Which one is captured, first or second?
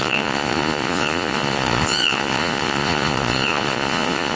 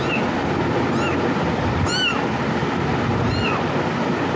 second